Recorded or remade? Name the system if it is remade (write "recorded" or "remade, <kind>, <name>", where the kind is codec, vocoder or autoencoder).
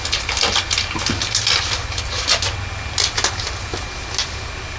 recorded